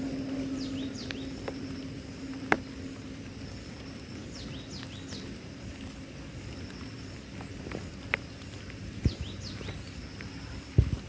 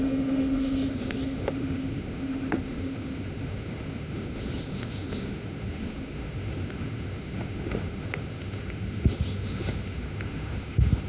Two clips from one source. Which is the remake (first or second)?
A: second